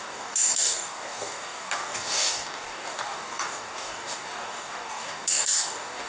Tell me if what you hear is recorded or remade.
remade